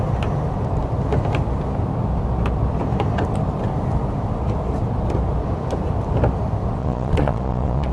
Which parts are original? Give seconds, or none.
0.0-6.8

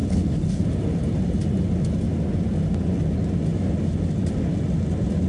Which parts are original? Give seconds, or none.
0.6-5.3

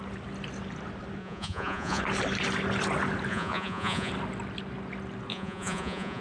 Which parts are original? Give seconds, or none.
0.0-1.2; 2.0-3.3; 4.1-5.3